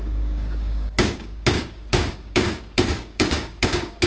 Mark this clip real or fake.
fake